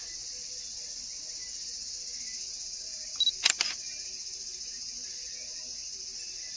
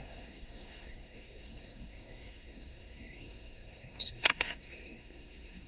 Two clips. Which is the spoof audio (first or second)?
second